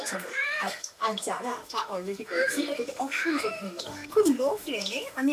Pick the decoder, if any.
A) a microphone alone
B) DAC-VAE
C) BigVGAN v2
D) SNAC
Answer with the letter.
B